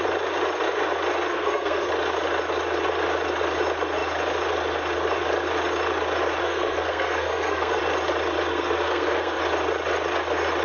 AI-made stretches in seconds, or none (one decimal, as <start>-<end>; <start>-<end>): 1.3-1.9; 6.4-7.8; 8.5-9.4